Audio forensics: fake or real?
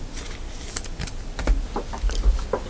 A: real